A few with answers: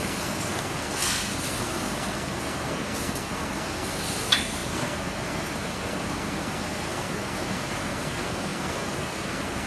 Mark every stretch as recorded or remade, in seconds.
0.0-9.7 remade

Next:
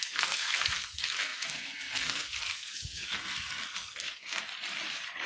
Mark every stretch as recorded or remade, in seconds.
0.0-4.5 remade; 4.5-5.3 recorded

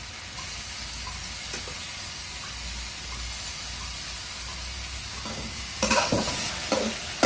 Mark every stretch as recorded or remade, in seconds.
0.0-5.1 recorded; 5.1-6.1 remade; 6.1-7.3 recorded

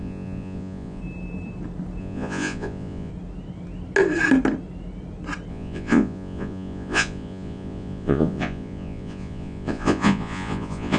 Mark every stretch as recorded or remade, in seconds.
0.0-1.0 remade; 1.0-2.0 recorded; 2.0-3.1 remade; 3.1-5.5 recorded; 5.5-11.0 remade